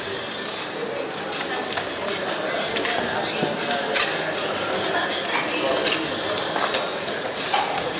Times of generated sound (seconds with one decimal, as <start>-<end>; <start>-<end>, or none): 6.9-8.0